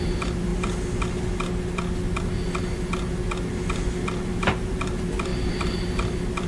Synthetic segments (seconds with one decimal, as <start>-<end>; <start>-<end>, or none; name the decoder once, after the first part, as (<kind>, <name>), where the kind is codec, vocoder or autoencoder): 0.0-0.5 (vocoder, BigVGAN v2); 4.4-5.3